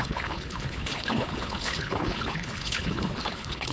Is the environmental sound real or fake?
fake